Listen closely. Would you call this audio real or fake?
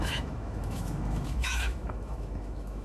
fake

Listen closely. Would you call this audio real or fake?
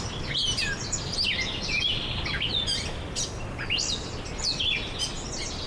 real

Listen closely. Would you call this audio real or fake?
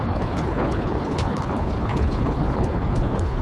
fake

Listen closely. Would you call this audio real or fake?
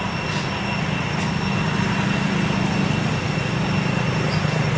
real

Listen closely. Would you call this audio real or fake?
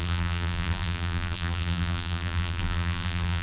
fake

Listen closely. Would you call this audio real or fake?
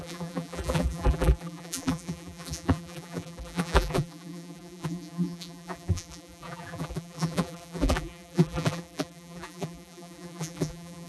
fake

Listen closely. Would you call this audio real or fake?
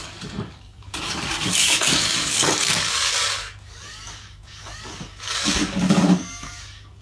fake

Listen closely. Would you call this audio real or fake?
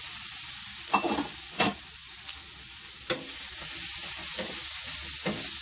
real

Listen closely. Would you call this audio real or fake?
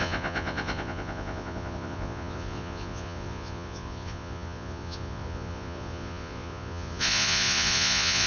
fake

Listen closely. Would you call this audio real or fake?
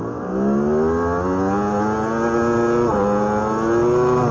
real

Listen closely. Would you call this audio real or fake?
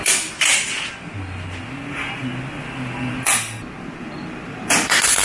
real